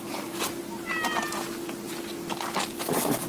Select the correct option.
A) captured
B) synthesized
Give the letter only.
A